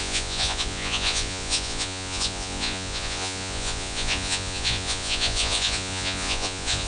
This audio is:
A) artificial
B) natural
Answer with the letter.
A